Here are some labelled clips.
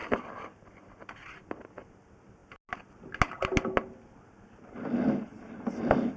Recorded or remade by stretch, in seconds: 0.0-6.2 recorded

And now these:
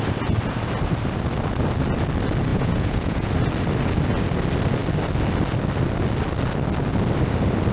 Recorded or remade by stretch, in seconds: 0.0-2.5 recorded; 2.5-3.3 remade; 3.3-7.7 recorded

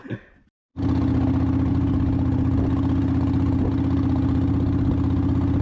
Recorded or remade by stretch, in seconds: 0.0-5.6 recorded

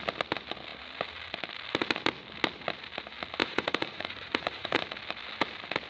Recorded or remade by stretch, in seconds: 0.0-3.4 recorded; 3.4-4.8 remade; 4.8-5.9 recorded

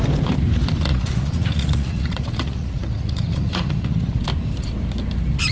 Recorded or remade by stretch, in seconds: 0.0-0.9 recorded; 0.9-4.2 remade; 4.2-5.5 recorded